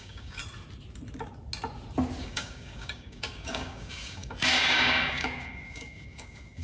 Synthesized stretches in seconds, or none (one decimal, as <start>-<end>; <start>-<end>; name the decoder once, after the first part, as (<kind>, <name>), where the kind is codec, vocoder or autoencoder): 0.0-0.4 (codec, DAC); 2.2-6.6